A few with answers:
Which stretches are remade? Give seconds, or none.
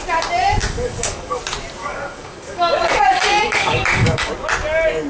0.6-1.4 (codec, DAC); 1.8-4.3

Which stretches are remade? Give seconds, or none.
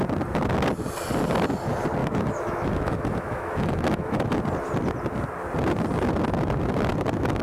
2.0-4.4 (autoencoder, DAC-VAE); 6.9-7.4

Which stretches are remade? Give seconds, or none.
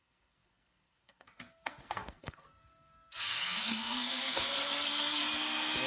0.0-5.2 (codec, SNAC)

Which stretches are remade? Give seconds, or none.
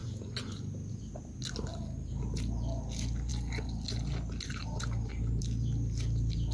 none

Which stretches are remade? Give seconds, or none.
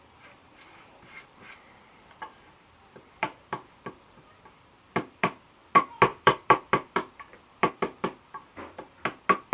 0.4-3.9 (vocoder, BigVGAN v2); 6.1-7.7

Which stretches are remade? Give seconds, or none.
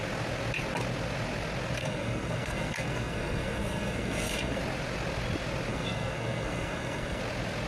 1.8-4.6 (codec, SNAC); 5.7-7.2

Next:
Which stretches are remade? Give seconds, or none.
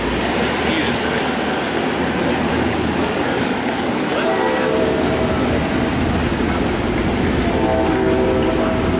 2.5-4.1 (codec, DAC)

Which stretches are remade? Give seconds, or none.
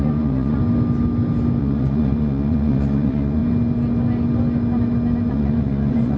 0.0-0.6 (vocoder, Vocos); 1.6-3.4; 5.3-6.2